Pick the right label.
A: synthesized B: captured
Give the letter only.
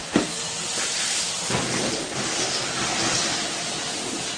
B